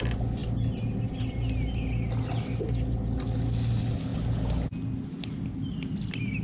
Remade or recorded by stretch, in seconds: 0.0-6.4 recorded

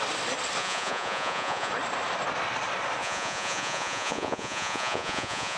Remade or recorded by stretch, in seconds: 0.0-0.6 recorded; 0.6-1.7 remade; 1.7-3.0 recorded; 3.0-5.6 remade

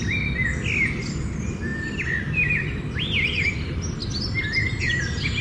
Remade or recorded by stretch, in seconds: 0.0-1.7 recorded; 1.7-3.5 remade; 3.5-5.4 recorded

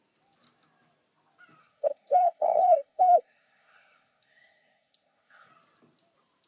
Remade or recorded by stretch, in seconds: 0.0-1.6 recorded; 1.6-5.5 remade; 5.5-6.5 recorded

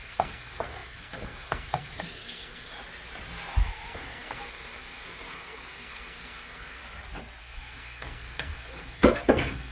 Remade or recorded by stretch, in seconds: 0.0-2.7 remade; 2.7-3.6 recorded; 3.6-6.8 remade; 6.8-7.4 recorded; 7.4-9.7 remade

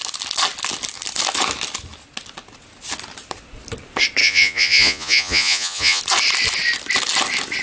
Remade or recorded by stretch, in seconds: 0.0-4.2 recorded; 4.2-6.0 remade; 6.0-7.6 recorded

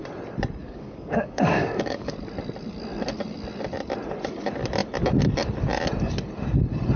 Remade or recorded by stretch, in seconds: 0.0-0.6 recorded; 0.6-2.1 remade; 2.1-7.0 recorded

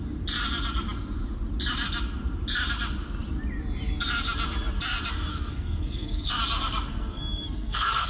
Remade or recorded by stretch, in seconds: 0.0-5.3 recorded; 5.3-6.3 remade; 6.3-6.9 recorded; 6.9-8.1 remade